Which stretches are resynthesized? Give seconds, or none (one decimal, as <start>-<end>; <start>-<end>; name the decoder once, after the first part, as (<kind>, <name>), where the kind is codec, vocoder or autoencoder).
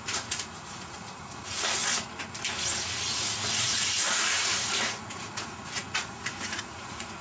0.0-1.8 (vocoder, Vocos); 3.0-7.2